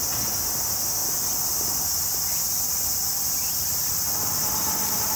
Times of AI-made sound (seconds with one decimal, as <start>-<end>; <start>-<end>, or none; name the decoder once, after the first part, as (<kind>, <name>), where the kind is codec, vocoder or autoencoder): none